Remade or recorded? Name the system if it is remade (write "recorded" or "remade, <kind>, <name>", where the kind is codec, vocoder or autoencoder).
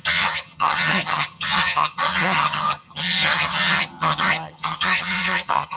remade, vocoder, HiFi-GAN